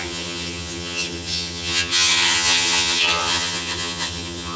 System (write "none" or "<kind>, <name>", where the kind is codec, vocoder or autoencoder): vocoder, HiFi-GAN